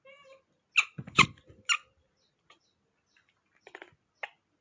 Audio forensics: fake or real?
real